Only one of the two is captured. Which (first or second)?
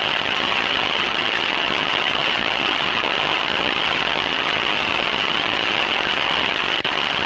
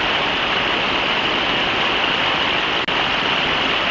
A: second